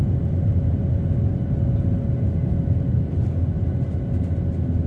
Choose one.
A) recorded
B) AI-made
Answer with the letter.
A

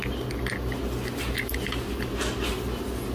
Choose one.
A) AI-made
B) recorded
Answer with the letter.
B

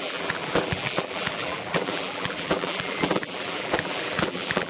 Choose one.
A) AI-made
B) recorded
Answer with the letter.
A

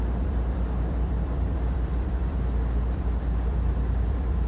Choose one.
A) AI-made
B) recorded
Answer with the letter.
A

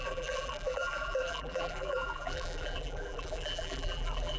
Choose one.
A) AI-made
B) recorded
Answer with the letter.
A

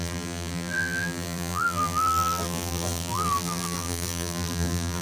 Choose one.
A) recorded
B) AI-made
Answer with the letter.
B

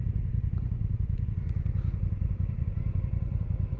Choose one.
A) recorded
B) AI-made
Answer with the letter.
B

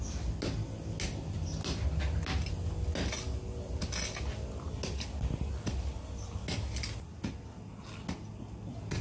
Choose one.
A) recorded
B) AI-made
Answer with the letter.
A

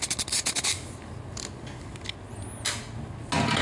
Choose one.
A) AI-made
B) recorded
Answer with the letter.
B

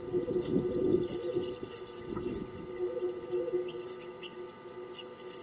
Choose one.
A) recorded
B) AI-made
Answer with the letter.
A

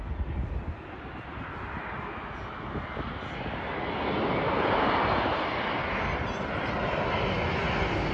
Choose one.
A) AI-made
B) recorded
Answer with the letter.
B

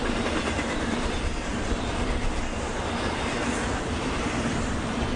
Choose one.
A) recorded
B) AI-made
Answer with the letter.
B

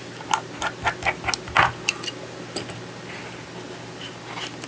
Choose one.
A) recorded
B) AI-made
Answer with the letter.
A